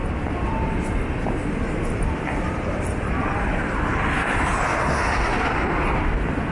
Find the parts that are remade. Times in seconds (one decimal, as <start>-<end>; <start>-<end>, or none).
0.0-3.9